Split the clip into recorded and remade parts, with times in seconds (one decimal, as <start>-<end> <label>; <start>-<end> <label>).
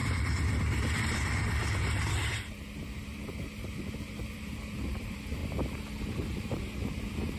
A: 0.0-1.6 remade; 1.6-2.3 recorded; 2.3-5.4 remade; 5.4-6.1 recorded; 6.1-7.4 remade